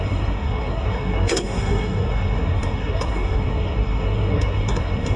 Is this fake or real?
fake